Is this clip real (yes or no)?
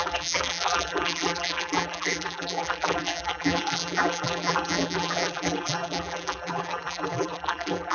no